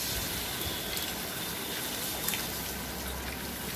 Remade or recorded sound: recorded